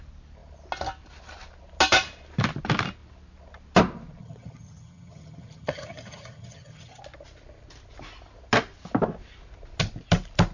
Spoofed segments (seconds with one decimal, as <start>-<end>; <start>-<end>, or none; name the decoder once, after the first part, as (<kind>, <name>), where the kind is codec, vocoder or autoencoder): 4.2-7.0 (vocoder, HiFi-GAN)